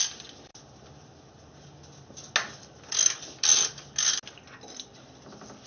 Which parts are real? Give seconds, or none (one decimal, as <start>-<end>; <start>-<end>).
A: 0.0-5.7